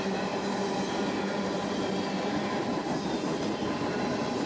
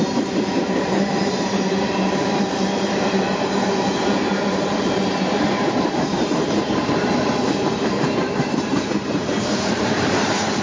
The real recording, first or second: first